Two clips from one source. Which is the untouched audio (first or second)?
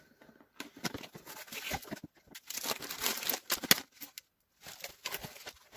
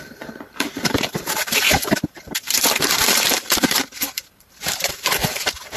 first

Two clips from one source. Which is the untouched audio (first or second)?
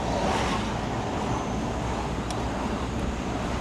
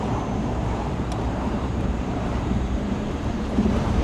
first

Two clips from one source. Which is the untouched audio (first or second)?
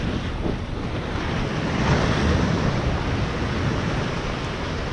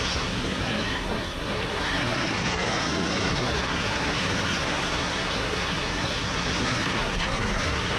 first